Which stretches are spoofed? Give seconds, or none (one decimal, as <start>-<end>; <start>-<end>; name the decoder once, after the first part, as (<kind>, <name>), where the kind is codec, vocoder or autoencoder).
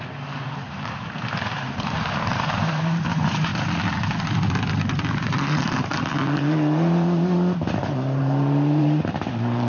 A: 0.0-3.5 (vocoder, BigVGAN v2); 5.1-6.1; 8.2-9.7